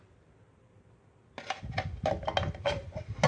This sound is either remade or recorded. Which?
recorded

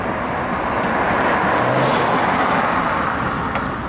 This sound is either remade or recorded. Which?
recorded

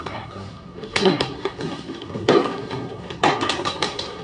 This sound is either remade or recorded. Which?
remade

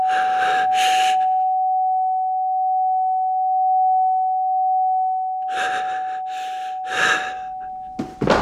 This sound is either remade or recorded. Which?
recorded